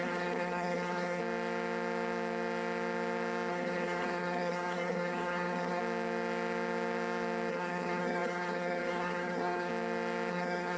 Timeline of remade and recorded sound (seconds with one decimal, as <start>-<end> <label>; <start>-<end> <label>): 0.0-1.2 remade; 1.2-3.5 recorded; 3.5-5.8 remade; 5.8-7.5 recorded; 7.5-9.7 remade; 9.7-10.3 recorded; 10.3-10.8 remade